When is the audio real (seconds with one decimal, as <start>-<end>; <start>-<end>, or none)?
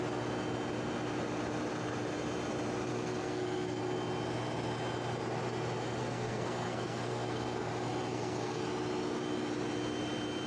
0.0-2.9; 3.8-6.0; 7.7-8.1; 8.6-10.5